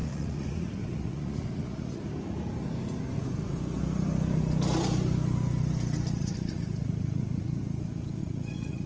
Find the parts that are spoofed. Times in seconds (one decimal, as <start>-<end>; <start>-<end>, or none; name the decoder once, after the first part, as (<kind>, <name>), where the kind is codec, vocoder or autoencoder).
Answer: 0.0-2.0 (vocoder, Vocos); 6.2-7.6; 8.2-8.9